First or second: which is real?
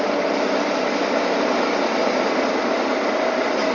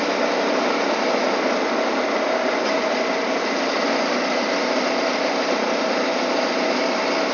second